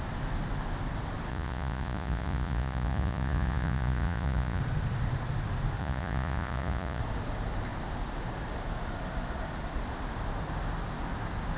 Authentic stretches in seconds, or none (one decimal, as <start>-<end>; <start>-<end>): 0.0-1.3; 4.6-5.8; 7.0-11.6